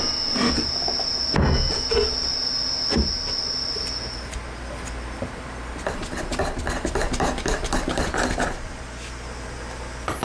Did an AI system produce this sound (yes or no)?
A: no